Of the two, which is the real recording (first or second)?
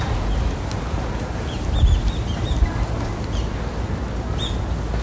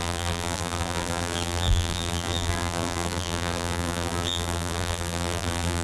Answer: first